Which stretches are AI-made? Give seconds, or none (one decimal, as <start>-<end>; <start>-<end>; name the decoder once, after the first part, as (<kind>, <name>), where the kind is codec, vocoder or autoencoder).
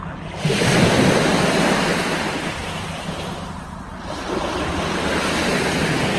none